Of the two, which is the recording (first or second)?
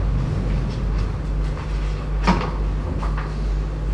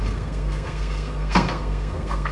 first